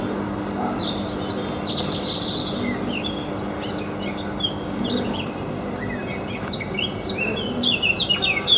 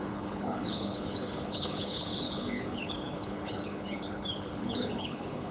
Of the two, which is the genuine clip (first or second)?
first